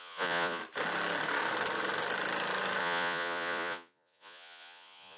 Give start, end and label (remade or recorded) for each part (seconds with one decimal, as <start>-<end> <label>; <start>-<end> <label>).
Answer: 0.0-0.6 remade; 0.6-2.8 recorded; 2.8-5.2 remade